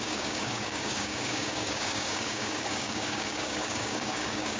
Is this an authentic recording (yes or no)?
no